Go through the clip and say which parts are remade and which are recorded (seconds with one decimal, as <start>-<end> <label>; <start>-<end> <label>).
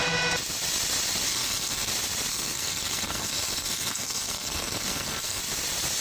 0.0-1.3 recorded; 1.3-1.9 remade; 1.9-2.3 recorded; 2.3-5.4 remade; 5.4-6.0 recorded